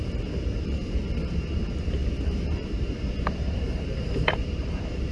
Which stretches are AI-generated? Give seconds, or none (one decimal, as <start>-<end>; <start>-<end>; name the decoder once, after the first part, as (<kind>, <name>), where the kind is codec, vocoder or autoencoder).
0.0-5.1 (vocoder, BigVGAN v2)